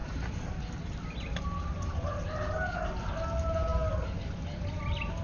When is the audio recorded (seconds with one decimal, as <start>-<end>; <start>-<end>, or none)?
0.0-5.2